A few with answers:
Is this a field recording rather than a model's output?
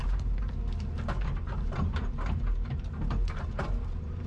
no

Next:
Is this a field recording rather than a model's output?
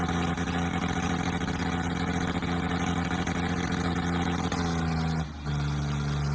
yes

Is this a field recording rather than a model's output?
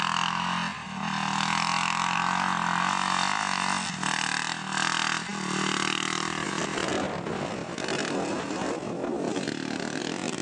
yes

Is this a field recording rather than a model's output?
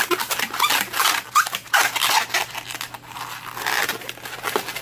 yes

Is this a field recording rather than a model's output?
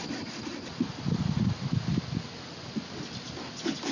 yes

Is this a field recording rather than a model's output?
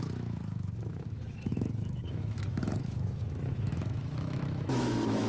no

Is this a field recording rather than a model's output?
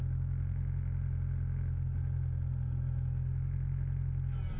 yes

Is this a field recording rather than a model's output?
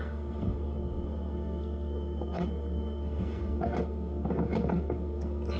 no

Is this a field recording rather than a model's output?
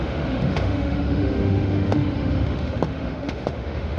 no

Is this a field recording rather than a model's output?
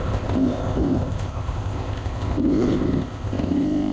no